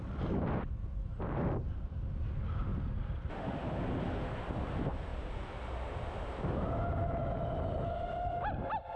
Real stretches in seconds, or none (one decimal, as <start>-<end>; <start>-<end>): 0.0-9.0